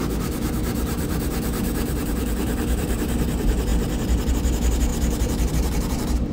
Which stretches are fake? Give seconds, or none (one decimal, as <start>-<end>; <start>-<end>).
0.0-6.3